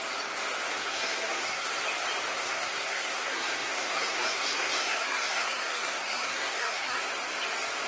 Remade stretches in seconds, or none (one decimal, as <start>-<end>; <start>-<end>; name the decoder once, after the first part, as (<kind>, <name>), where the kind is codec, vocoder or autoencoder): 0.7-1.7 (codec, SNAC); 2.3-7.0